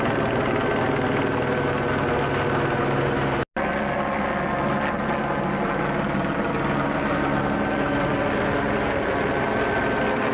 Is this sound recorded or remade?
recorded